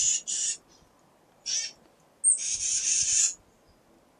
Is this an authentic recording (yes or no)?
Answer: yes